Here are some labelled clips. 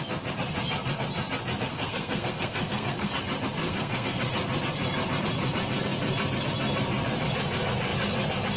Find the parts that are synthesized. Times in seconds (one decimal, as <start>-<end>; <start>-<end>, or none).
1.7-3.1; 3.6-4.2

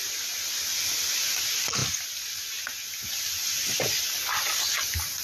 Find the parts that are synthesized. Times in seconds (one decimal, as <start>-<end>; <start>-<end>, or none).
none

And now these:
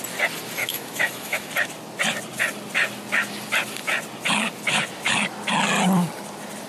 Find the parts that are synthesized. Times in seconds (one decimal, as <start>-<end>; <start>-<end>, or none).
0.6-1.5